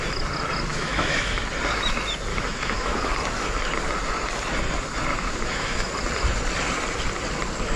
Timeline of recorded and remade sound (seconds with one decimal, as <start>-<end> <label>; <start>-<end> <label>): 0.0-0.7 recorded; 0.7-1.4 remade; 1.4-2.3 recorded; 2.3-3.1 remade; 3.1-5.1 recorded; 5.1-5.9 remade; 5.9-7.8 recorded